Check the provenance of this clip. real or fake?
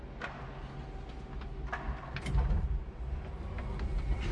real